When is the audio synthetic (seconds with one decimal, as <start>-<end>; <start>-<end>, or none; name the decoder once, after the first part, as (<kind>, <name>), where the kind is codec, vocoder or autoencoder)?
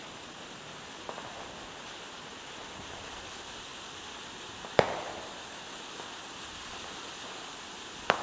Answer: none